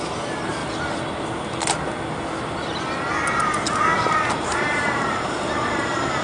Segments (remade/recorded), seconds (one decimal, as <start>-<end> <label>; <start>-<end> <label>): 0.0-0.6 remade; 0.6-4.3 recorded; 4.3-6.2 remade